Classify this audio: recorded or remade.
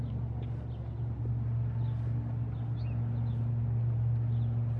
recorded